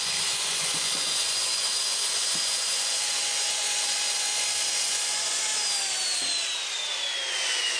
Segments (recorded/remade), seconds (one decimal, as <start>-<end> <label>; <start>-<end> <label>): 0.0-4.3 remade; 4.3-4.8 recorded; 4.8-5.5 remade; 5.5-7.3 recorded; 7.3-7.8 remade